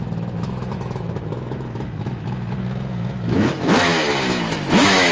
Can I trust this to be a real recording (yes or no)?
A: no